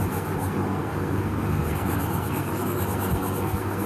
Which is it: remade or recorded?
remade